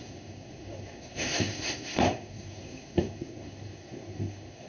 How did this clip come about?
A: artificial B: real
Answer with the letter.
A